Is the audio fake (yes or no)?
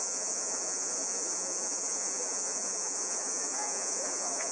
yes